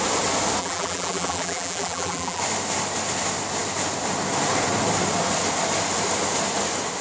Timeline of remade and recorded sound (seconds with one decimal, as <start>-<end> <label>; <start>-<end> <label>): 0.0-0.6 recorded; 0.6-2.4 remade; 2.4-7.0 recorded